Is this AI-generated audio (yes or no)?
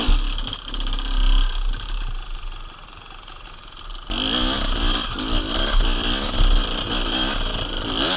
no